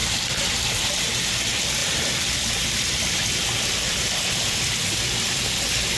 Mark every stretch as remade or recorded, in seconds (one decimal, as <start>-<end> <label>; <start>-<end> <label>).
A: 0.0-1.8 recorded; 1.8-5.4 remade; 5.4-6.0 recorded

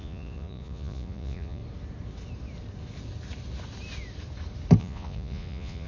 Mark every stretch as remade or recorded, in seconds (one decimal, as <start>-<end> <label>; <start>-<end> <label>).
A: 0.0-1.6 remade; 1.6-4.8 recorded; 4.8-5.9 remade

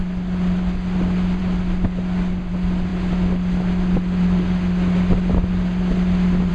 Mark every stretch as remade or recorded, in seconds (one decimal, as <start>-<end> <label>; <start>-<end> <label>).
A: 0.0-6.5 recorded

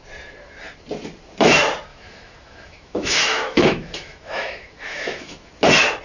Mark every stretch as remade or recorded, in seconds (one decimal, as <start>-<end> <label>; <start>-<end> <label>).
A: 0.0-1.9 recorded; 1.9-5.5 remade; 5.5-6.0 recorded

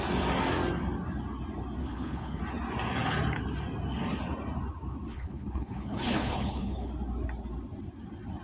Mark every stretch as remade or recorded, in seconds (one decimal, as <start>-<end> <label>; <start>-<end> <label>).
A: 0.0-1.8 recorded; 1.8-2.4 remade; 2.4-5.1 recorded; 5.1-6.9 remade; 6.9-8.4 recorded

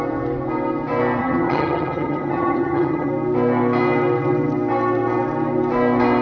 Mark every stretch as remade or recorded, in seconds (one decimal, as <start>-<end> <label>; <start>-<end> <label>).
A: 0.0-1.2 recorded; 1.2-3.1 remade; 3.1-6.2 recorded

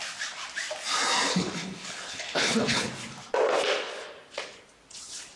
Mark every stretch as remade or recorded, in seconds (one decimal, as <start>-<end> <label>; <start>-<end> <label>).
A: 0.0-1.3 recorded; 1.3-2.9 remade; 2.9-5.4 recorded